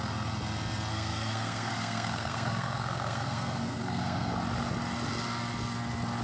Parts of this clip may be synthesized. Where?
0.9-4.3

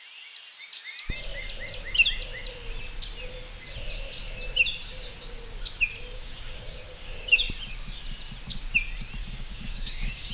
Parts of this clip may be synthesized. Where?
6.2-7.4; 9.2-10.3

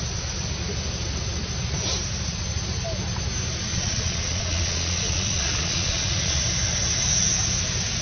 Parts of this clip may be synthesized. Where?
3.7-6.4